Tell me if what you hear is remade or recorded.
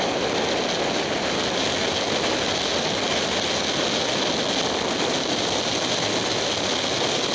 recorded